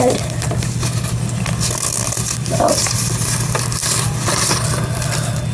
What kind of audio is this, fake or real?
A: real